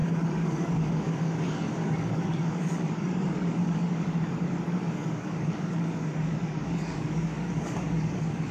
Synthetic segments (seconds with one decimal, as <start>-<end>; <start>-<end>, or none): 0.0-8.5